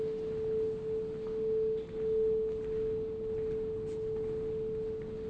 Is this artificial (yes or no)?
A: no